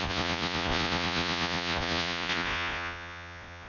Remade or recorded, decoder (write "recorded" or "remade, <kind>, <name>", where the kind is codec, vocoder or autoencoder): remade, vocoder, Vocos